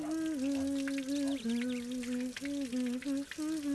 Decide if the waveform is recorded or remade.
recorded